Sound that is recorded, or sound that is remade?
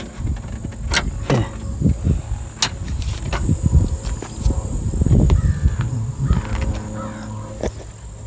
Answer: recorded